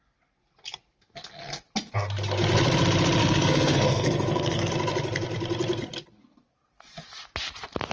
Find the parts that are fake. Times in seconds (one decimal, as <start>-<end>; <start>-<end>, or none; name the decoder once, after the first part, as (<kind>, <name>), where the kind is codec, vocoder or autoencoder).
3.2-4.7 (codec, SNAC)